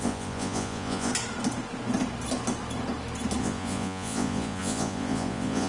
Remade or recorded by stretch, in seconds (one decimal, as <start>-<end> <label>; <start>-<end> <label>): 0.0-1.1 remade; 1.1-3.4 recorded; 3.4-5.7 remade